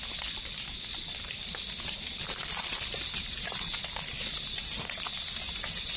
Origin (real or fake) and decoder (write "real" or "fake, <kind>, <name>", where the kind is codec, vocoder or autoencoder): real